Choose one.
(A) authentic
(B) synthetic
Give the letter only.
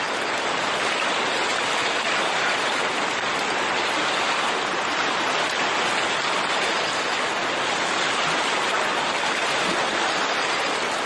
A